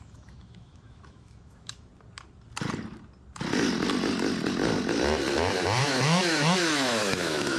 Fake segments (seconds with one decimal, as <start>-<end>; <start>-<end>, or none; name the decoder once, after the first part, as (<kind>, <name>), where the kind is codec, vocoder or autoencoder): 0.0-1.9 (autoencoder, DAC-VAE); 5.8-7.6